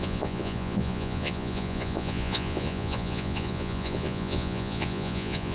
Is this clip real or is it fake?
fake